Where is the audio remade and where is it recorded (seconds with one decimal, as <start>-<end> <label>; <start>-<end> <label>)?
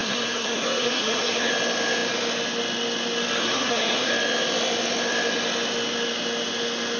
0.0-1.5 remade; 1.5-3.4 recorded; 3.4-4.1 remade; 4.1-7.0 recorded